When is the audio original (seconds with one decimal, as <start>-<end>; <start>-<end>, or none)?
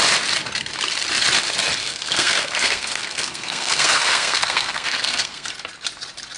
0.0-1.8; 5.5-6.4